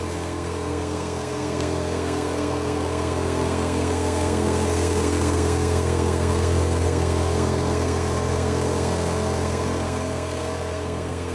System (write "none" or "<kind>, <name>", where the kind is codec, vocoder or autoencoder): codec, SNAC